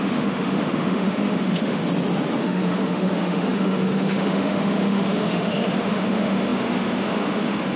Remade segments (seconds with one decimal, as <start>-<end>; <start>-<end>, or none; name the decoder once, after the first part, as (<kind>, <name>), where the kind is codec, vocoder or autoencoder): 0.0-1.8 (autoencoder, DAC-VAE); 2.4-7.8